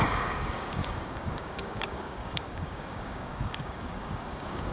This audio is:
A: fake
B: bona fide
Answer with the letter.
A